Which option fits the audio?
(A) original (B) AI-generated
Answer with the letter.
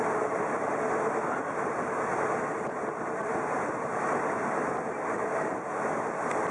A